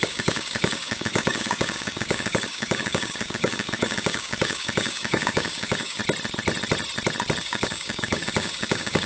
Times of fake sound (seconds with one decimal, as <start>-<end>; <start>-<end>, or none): 0.0-6.0; 7.4-9.1